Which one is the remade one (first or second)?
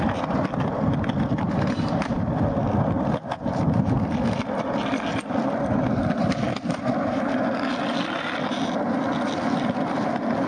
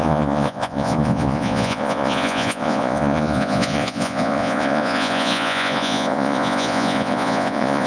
second